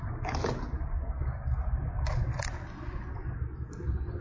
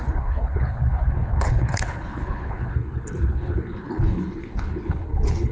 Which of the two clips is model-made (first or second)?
second